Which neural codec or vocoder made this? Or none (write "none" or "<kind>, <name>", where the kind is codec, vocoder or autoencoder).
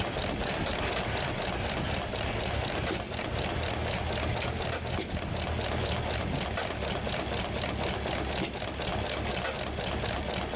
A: none